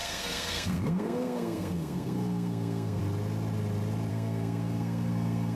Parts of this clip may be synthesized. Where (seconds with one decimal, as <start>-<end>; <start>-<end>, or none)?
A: 0.0-3.0; 4.1-5.6